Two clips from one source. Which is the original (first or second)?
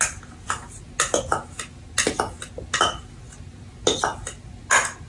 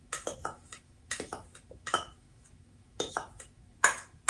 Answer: first